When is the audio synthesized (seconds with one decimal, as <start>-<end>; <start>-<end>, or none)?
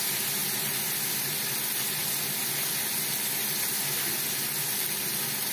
none